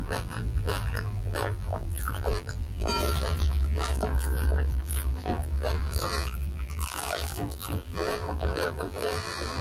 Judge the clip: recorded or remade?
remade